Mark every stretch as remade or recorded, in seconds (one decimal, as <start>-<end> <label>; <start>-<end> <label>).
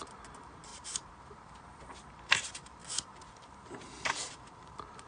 0.0-2.8 remade; 2.8-3.3 recorded; 3.3-5.1 remade